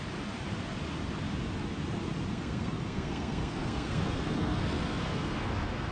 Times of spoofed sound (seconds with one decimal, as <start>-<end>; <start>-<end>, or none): 2.3-5.9